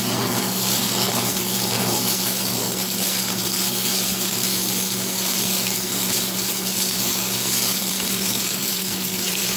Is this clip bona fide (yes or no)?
no